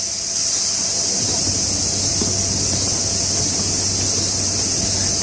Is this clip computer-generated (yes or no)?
no